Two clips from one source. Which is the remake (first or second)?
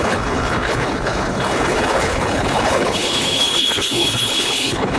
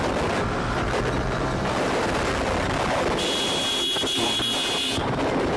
first